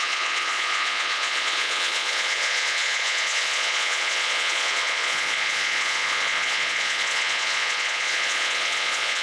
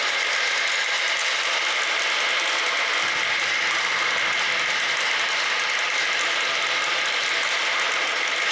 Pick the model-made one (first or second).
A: first